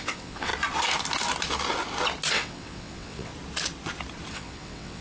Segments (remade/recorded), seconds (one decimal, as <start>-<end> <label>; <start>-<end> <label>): 0.0-0.5 remade; 0.5-2.3 recorded; 2.3-3.3 remade; 3.3-4.3 recorded; 4.3-5.0 remade